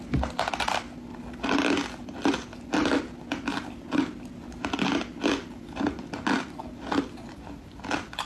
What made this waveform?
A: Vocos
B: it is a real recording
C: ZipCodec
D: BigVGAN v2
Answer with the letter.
B